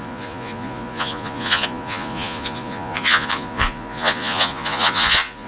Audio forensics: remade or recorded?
remade